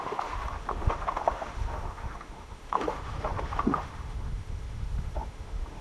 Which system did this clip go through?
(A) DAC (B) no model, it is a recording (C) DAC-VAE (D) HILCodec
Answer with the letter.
C